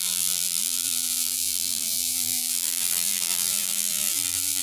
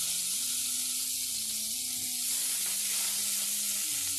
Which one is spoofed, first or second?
first